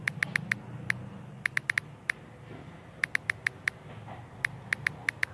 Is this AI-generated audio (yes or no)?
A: no